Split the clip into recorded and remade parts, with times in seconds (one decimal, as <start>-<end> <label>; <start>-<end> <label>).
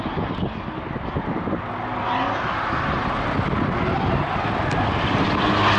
0.0-5.8 recorded